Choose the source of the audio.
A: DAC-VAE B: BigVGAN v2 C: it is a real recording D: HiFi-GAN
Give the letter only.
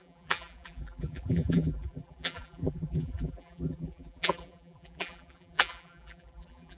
B